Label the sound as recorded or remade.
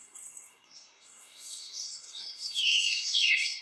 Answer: remade